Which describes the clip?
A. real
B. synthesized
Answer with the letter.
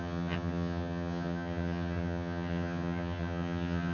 B